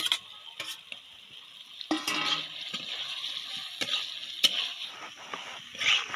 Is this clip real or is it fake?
real